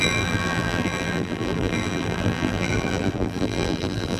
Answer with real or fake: fake